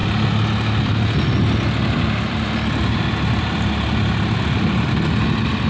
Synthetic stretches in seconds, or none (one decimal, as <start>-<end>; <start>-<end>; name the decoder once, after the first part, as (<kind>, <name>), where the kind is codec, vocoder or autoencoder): none